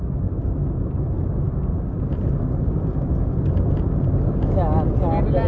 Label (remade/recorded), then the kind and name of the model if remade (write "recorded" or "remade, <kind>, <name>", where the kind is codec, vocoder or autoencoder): recorded